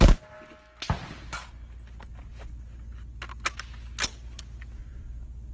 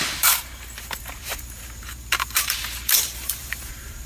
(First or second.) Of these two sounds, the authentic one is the first